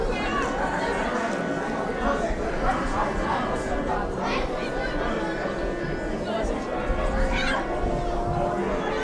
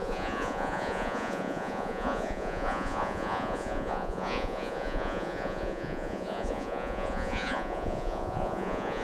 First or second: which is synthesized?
second